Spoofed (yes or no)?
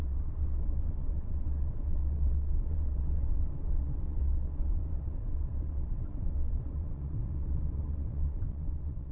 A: yes